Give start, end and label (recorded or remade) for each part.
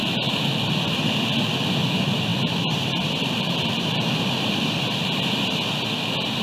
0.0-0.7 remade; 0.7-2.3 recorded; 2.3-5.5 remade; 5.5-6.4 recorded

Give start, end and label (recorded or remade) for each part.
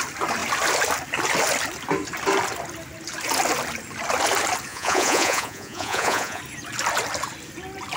0.0-4.7 recorded; 4.7-6.4 remade; 6.4-8.0 recorded